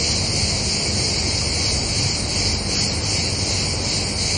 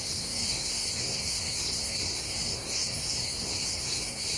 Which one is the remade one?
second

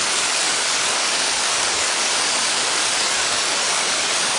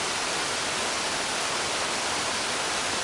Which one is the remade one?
first